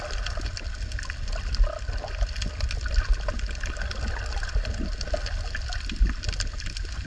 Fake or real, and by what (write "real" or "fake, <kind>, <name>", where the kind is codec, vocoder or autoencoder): real